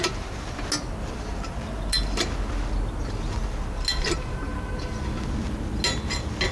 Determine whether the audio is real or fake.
real